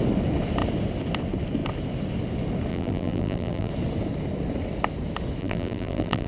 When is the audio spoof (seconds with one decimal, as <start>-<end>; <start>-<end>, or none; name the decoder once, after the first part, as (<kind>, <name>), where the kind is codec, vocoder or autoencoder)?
2.7-3.7 (vocoder, BigVGAN v2); 5.4-6.3